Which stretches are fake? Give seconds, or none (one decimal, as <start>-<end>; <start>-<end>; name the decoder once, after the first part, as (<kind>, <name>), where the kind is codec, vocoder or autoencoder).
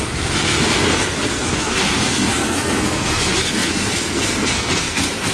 0.0-5.3 (codec, SNAC)